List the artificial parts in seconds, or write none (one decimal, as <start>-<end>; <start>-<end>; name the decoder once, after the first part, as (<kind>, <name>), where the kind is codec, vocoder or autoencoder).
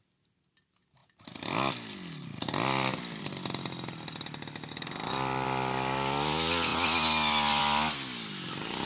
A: none